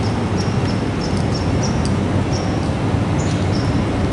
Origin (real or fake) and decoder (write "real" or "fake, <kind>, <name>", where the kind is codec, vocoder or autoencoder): real